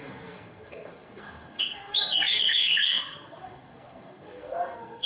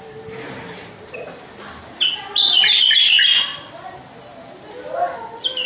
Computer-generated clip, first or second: first